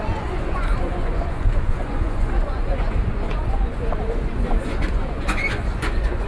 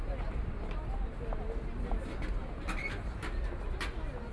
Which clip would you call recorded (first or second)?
second